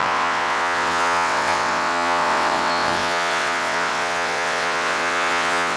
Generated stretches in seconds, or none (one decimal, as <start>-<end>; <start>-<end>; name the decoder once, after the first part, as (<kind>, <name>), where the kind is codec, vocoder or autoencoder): 0.0-5.8 (vocoder, WaveNeXt)